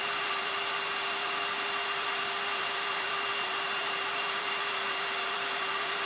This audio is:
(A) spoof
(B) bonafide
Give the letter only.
A